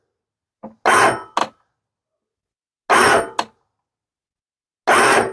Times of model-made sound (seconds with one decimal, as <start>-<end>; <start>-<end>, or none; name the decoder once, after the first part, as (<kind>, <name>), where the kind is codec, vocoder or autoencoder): none